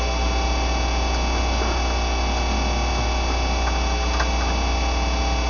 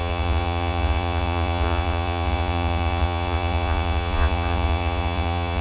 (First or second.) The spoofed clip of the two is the second